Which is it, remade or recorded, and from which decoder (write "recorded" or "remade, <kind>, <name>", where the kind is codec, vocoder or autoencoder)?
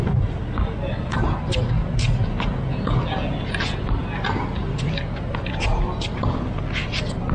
recorded